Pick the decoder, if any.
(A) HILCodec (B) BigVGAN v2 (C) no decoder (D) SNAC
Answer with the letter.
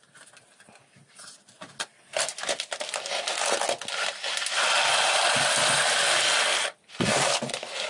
C